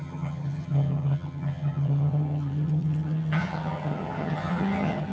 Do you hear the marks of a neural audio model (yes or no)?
yes